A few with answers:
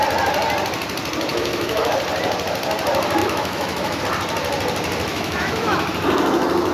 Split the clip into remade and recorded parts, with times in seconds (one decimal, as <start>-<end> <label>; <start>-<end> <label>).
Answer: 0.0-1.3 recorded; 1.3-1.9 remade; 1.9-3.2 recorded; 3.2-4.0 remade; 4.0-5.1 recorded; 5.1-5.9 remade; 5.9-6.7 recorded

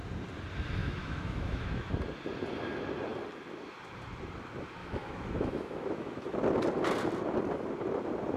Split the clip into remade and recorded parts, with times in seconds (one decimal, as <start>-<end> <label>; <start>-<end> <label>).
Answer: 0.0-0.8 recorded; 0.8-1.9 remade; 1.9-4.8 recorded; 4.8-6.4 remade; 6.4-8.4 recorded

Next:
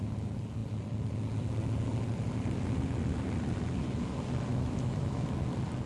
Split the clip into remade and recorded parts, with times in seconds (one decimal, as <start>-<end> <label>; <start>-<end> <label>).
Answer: 0.0-4.5 recorded; 4.5-5.3 remade; 5.3-5.9 recorded